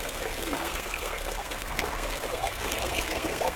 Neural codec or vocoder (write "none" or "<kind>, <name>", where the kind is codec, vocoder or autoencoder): codec, SNAC